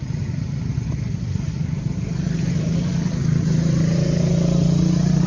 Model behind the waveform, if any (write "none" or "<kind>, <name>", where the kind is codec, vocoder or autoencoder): none